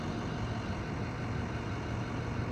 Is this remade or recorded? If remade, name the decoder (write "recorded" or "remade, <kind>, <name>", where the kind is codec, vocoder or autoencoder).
recorded